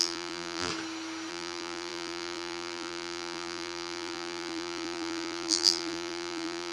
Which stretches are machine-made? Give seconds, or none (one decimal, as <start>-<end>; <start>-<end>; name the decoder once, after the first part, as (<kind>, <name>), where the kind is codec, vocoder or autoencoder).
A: 0.0-0.7 (vocoder, BigVGAN v2); 1.3-6.7